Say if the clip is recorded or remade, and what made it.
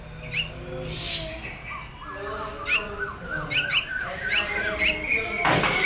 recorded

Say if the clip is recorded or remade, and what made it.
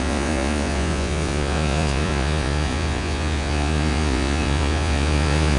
remade, vocoder, Vocos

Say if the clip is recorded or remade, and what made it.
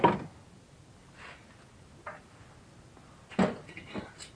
recorded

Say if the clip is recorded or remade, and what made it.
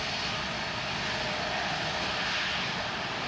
recorded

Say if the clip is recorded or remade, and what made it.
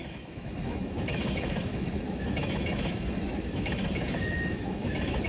remade, autoencoder, DAC-VAE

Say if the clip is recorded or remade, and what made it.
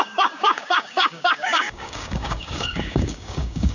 remade, codec, DAC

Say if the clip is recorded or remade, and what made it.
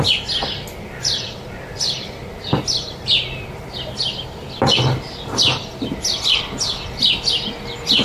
recorded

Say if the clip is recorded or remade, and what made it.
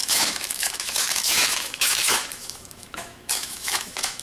remade, autoencoder, DAC-VAE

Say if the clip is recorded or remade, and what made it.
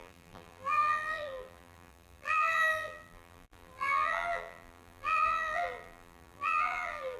remade, vocoder, BigVGAN v2